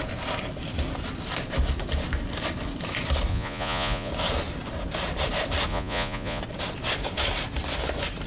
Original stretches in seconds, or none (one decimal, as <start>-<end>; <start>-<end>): 0.0-3.3; 4.1-5.7; 6.4-8.3

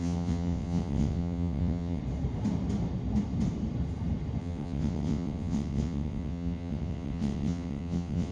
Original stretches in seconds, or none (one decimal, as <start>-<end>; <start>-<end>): 2.0-4.4

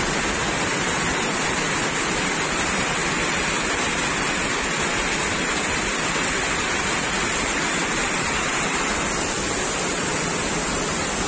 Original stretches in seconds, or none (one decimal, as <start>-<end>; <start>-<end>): 0.0-7.8; 8.5-11.3

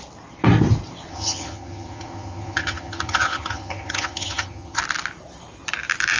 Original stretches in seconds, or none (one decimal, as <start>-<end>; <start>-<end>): 0.0-1.1; 4.8-6.2

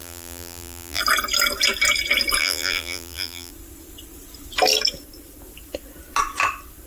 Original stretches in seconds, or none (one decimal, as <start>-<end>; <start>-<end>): 1.0-2.4; 3.5-6.9

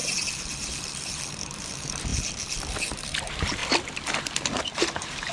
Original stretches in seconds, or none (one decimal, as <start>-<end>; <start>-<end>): 3.6-4.7